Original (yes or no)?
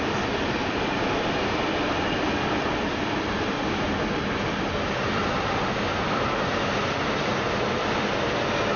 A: yes